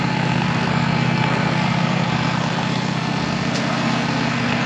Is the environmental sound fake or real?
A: fake